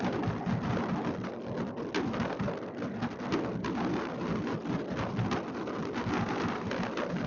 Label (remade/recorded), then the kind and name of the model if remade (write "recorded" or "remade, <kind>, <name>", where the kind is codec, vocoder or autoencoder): remade, vocoder, BigVGAN v2